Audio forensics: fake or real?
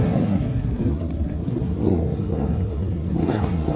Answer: fake